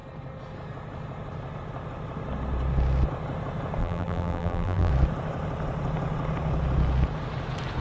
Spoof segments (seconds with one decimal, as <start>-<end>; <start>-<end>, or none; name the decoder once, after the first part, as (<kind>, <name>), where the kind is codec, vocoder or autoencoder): 3.8-4.9 (vocoder, BigVGAN v2)